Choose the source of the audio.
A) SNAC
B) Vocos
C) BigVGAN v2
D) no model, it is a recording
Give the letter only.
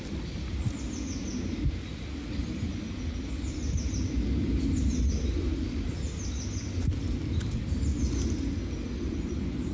D